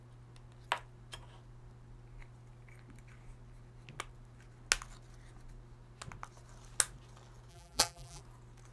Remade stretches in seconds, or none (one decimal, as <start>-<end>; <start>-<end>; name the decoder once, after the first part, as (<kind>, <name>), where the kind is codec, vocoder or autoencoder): 7.5-8.2 (vocoder, BigVGAN v2)